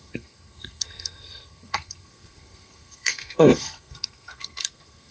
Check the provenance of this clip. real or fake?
fake